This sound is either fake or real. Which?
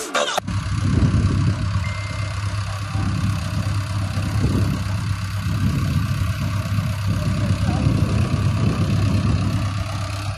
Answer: real